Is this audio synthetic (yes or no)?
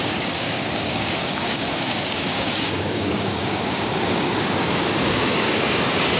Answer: yes